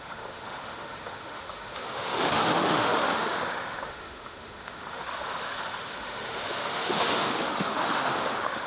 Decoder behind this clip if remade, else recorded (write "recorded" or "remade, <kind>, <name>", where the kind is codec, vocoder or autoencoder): remade, autoencoder, DAC-VAE